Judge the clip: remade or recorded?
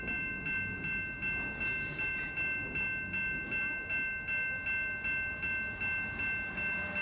recorded